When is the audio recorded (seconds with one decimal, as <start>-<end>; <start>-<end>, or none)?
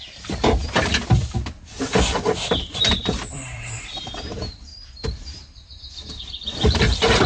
0.6-3.0